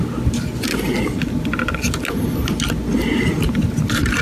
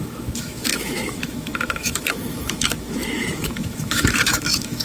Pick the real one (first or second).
first